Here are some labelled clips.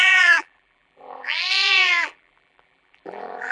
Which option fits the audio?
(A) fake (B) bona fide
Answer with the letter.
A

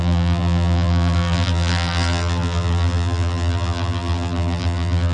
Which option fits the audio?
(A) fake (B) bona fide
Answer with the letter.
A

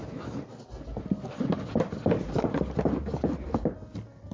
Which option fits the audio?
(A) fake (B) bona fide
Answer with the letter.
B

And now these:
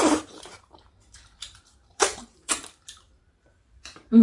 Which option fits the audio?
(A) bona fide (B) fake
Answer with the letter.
B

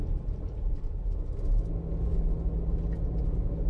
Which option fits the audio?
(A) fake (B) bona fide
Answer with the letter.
B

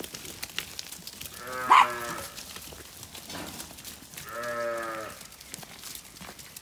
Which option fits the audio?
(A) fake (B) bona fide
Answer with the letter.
B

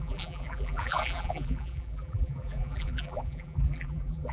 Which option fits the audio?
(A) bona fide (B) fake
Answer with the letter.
B